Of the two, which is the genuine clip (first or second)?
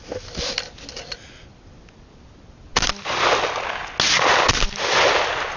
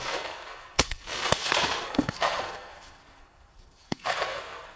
first